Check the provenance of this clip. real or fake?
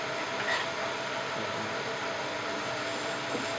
real